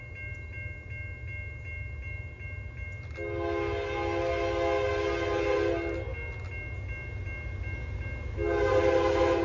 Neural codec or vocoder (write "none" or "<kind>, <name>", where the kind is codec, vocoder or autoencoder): none